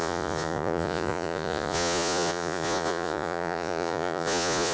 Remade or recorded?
remade